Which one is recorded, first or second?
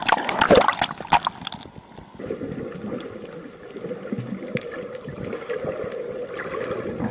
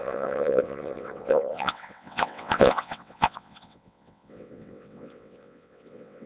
first